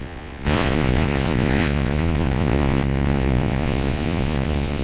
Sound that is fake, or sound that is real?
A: fake